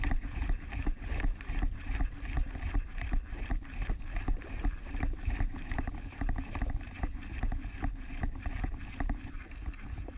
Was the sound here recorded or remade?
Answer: remade